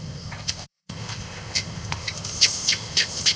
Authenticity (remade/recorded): remade